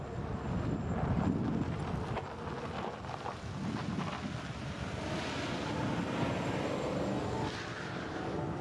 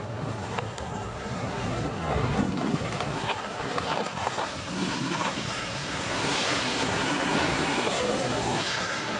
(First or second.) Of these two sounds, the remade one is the second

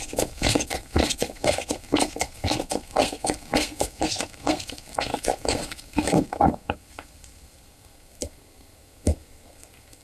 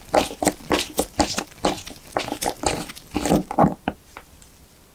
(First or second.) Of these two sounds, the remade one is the first